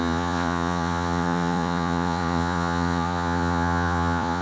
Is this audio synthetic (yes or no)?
yes